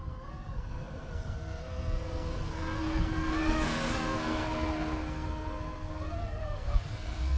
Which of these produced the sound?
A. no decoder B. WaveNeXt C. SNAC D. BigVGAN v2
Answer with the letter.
C